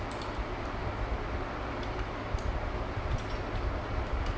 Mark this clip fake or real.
real